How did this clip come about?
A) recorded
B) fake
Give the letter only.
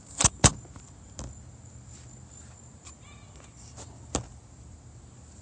A